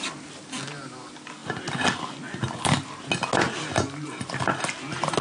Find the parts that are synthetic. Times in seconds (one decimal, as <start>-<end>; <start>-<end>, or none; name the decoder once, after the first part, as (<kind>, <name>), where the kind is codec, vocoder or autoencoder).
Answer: none